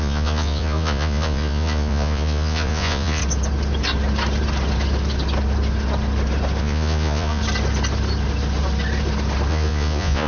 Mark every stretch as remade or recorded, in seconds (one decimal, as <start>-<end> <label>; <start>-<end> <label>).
0.0-3.2 remade; 3.2-6.6 recorded; 6.6-7.4 remade; 7.4-9.5 recorded; 9.5-10.3 remade